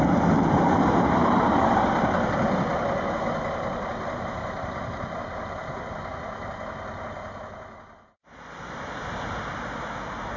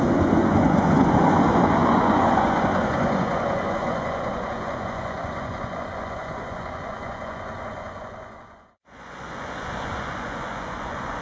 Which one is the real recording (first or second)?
first